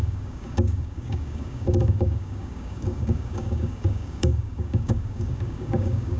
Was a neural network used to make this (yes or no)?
yes